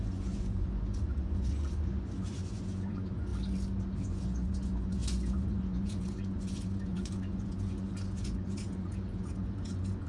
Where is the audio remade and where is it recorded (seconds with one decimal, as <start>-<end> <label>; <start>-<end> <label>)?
0.0-3.3 remade; 3.3-4.0 recorded; 4.0-10.1 remade